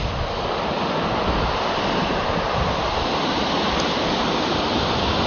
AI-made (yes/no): no